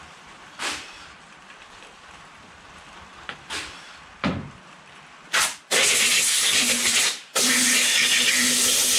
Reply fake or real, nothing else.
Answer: fake